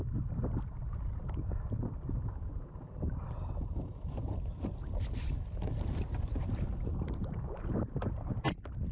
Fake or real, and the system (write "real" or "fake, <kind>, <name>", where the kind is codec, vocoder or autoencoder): real